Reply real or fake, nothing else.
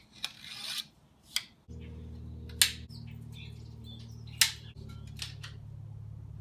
real